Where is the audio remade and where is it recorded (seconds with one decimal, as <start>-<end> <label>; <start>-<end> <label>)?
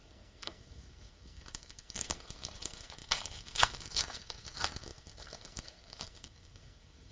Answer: 0.0-7.1 remade